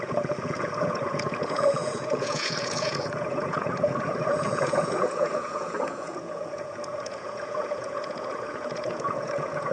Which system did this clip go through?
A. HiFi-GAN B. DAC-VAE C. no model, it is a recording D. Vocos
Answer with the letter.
D